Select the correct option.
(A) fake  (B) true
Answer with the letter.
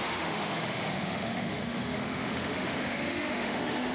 A